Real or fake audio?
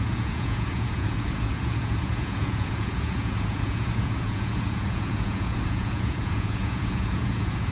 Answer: fake